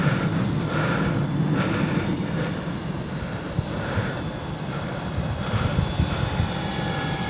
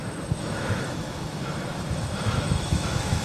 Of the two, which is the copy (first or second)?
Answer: second